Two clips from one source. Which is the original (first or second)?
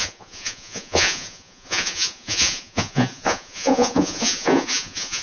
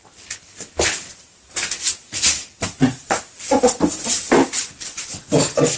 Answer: second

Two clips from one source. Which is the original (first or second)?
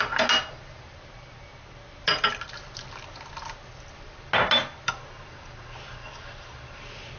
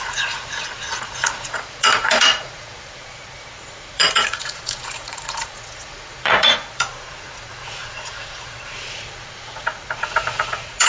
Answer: first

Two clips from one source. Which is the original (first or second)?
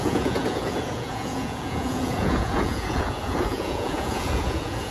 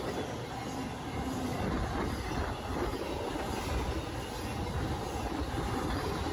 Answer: second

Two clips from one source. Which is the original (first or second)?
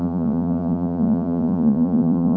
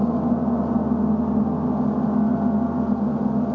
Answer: second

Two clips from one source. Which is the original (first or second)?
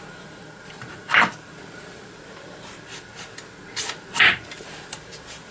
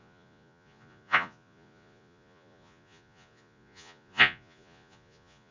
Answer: first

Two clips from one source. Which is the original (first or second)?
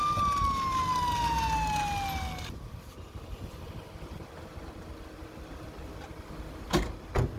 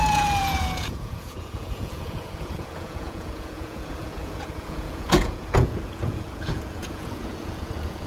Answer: first